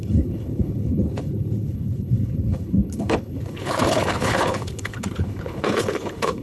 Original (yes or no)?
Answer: no